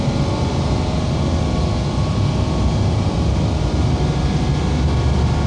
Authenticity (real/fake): real